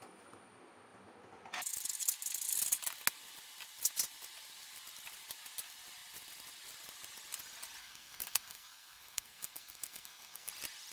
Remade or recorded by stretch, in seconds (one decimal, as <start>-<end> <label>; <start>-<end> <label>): 0.0-7.8 recorded; 7.8-10.5 remade; 10.5-10.9 recorded